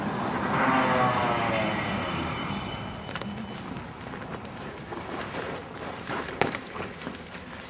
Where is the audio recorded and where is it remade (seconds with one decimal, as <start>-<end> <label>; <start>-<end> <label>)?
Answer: 0.0-1.7 recorded; 1.7-3.2 remade; 3.2-4.3 recorded; 4.3-6.6 remade; 6.6-7.7 recorded